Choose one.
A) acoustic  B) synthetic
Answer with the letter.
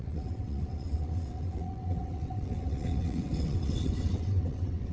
B